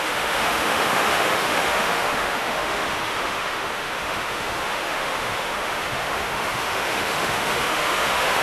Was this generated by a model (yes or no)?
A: yes